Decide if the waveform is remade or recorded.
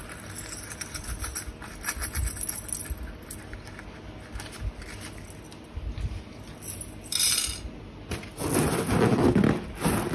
recorded